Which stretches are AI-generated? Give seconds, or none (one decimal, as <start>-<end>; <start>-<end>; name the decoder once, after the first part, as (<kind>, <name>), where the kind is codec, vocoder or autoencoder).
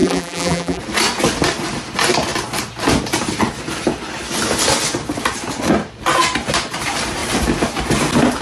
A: 0.0-0.8 (vocoder, BigVGAN v2)